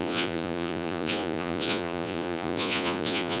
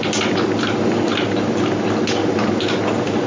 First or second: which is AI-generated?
first